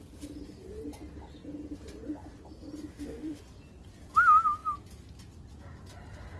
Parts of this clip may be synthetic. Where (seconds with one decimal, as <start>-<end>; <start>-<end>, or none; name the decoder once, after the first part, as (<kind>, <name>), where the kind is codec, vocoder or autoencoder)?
2.9-3.4 (autoencoder, DAC-VAE)